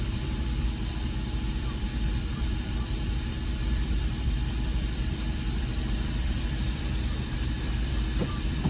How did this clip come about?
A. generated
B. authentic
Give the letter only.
A